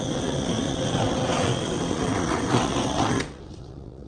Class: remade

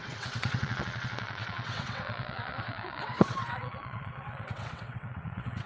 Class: remade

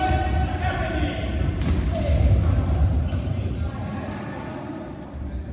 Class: recorded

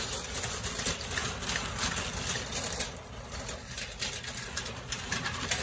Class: recorded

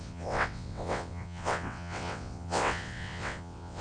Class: remade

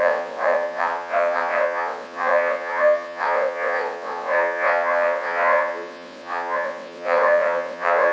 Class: remade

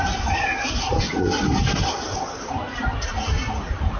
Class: recorded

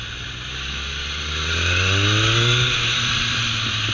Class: recorded